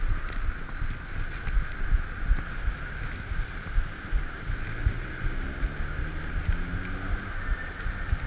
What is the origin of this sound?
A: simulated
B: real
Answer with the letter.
B